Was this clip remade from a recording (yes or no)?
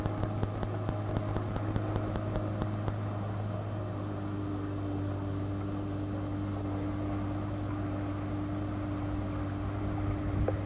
no